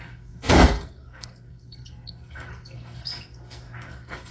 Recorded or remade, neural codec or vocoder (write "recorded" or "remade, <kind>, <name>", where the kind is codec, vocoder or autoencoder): remade, codec, SNAC